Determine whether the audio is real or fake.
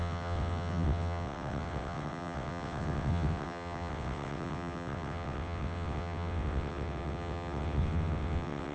fake